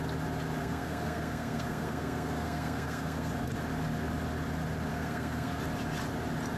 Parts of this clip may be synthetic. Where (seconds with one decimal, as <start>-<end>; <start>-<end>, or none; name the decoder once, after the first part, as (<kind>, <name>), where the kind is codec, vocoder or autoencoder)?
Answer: 0.6-3.3 (codec, SNAC); 4.9-5.6